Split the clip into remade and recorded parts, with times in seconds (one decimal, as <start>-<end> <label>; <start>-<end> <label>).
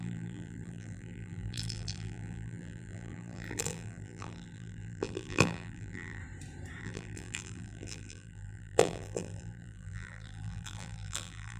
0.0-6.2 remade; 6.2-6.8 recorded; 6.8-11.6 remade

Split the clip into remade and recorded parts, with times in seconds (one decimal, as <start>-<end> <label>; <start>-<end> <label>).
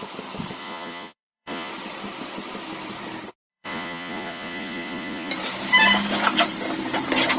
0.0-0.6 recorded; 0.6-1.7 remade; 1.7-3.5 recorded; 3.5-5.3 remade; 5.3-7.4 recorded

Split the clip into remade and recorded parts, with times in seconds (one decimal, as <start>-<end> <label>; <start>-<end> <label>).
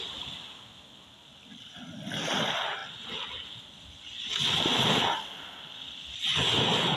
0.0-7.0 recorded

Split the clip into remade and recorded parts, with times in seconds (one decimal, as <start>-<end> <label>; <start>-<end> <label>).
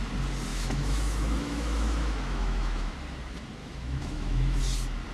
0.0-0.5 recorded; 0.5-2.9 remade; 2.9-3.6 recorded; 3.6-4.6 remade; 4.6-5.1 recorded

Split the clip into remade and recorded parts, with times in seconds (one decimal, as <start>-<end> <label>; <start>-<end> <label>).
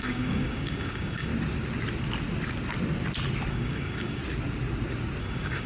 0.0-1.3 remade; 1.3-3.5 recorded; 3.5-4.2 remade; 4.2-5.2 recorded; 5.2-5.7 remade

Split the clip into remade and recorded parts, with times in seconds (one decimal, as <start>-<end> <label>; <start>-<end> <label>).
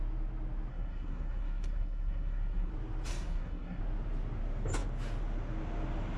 0.0-0.7 recorded; 0.7-2.7 remade; 2.7-3.1 recorded; 3.1-3.8 remade; 3.8-6.2 recorded